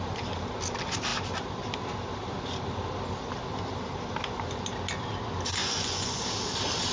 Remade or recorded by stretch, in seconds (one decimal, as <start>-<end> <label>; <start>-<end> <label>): 0.0-5.6 recorded; 5.6-6.2 remade; 6.2-6.9 recorded